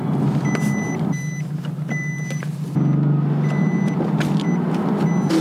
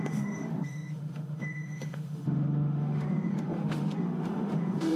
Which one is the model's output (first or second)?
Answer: second